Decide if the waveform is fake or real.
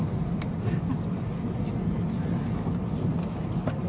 real